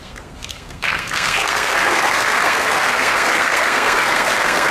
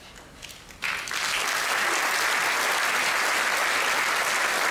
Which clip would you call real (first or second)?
second